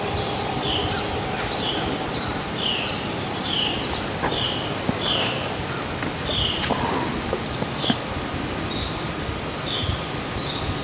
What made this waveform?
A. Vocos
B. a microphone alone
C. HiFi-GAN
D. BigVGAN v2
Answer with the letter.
B